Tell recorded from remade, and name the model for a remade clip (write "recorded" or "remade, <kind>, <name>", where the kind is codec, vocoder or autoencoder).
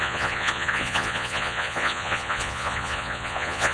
remade, vocoder, Vocos